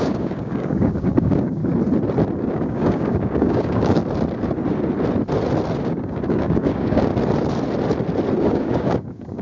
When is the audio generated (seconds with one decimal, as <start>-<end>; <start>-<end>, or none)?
0.0-1.6; 2.5-4.0; 5.8-7.1; 8.4-9.4